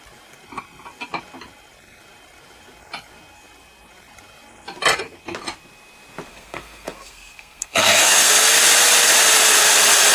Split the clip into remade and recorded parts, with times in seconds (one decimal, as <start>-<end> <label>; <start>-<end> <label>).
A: 0.0-6.3 recorded; 6.3-8.3 remade; 8.3-10.1 recorded